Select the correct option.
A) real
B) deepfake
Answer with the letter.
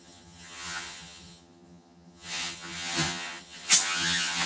B